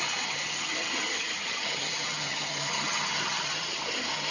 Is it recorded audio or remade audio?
remade